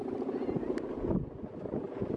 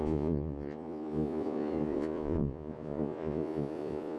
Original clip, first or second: first